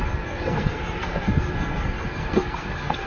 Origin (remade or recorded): remade